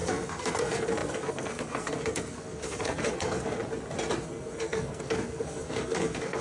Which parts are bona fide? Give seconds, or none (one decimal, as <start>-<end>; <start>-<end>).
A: 3.6-4.2